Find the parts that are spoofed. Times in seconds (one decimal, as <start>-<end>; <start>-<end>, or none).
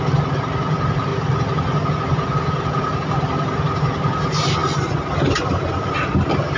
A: none